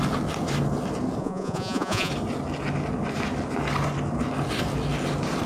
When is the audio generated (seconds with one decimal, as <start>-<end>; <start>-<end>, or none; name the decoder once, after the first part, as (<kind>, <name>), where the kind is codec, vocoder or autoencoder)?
1.2-2.1 (vocoder, Vocos)